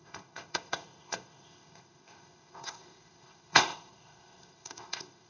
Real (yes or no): no